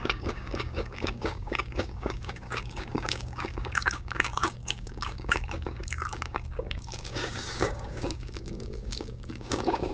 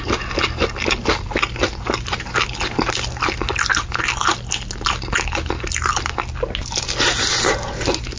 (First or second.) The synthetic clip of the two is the first